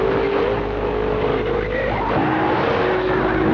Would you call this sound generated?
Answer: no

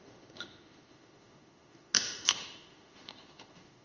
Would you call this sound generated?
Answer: yes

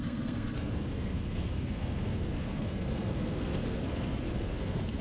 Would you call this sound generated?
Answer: yes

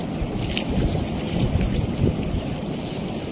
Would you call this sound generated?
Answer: no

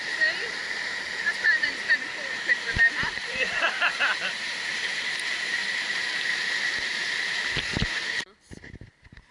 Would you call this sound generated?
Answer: yes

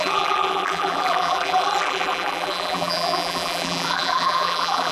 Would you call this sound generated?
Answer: yes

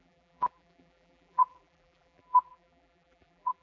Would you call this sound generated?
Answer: yes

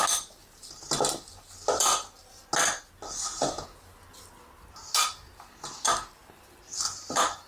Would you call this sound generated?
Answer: no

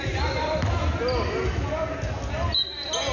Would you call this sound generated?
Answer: no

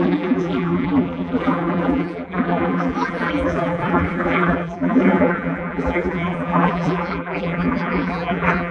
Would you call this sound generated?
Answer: yes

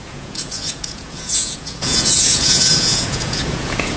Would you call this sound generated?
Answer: yes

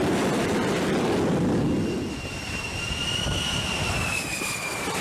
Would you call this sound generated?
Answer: yes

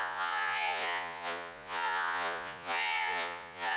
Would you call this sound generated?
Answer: yes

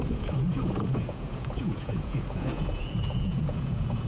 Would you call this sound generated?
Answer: yes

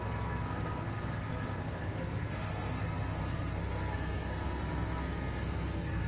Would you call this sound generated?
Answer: yes